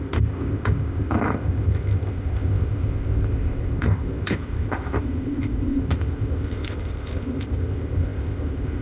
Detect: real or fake fake